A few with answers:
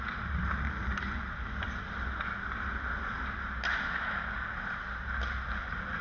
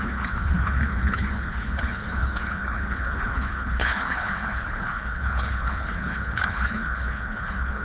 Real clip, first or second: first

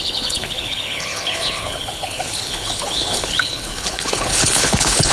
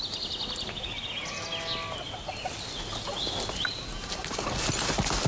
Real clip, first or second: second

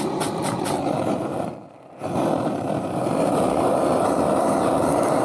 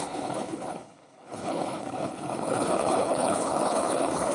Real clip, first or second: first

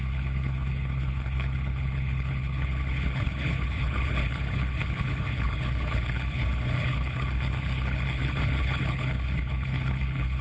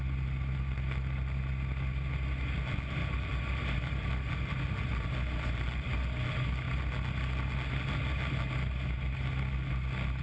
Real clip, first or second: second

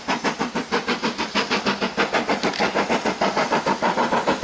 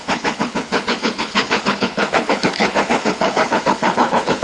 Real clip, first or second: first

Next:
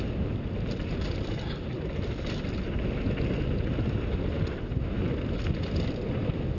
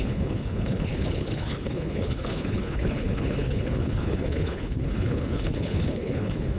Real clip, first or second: first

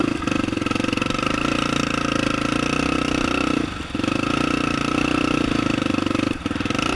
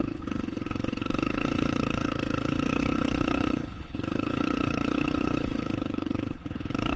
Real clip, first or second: first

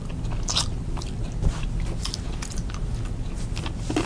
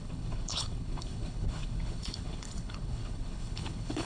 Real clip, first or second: first